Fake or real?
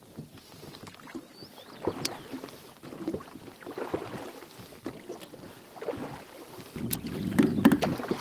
real